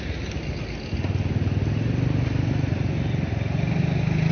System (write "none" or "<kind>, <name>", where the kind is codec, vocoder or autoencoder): none